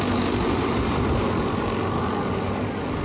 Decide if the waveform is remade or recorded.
recorded